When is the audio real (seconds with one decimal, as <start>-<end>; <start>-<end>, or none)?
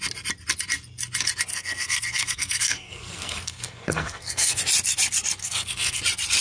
0.0-1.5; 4.6-5.4; 6.0-6.4